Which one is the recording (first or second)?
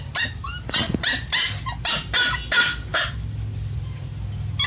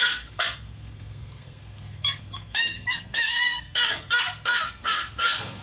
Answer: first